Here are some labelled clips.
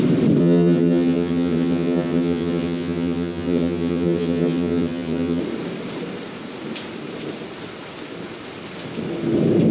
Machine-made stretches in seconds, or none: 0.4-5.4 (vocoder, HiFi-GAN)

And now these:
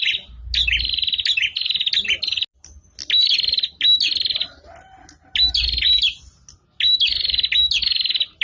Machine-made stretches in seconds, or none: none

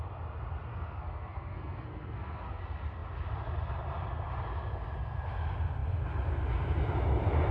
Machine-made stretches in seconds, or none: 0.7-2.6 (codec, SNAC)